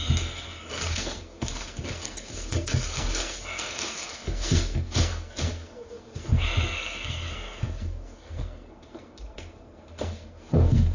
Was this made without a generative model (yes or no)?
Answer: no